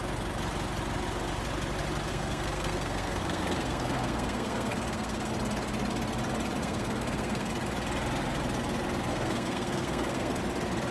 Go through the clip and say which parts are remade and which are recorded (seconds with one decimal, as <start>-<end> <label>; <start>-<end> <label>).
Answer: 0.0-2.1 recorded; 2.1-5.3 remade; 5.3-6.6 recorded; 6.6-7.5 remade; 7.5-9.1 recorded; 9.1-10.4 remade; 10.4-10.9 recorded